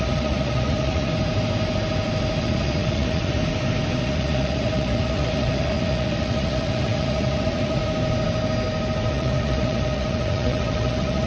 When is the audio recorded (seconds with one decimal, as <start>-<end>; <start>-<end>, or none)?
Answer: 1.1-2.4; 3.4-4.0; 7.8-9.1

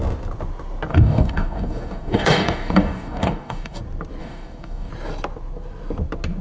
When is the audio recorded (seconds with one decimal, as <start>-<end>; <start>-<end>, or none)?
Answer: 0.0-0.9; 3.8-4.2; 4.9-6.4

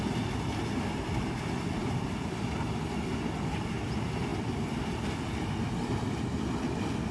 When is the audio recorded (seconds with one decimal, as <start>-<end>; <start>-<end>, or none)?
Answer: 0.0-1.8; 2.8-7.1

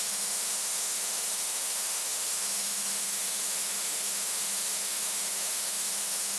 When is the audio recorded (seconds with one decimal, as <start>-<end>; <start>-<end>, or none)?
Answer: none